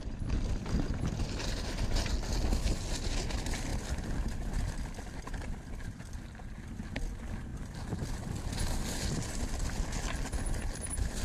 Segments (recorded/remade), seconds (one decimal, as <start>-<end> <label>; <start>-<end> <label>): 0.0-11.2 recorded